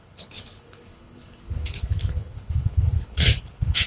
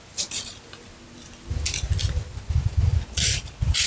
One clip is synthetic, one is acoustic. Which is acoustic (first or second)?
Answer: second